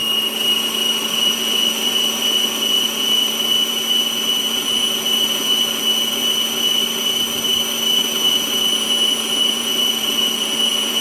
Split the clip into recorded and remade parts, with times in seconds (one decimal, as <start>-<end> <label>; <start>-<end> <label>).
0.0-1.1 recorded; 1.1-6.8 remade; 6.8-8.2 recorded; 8.2-11.0 remade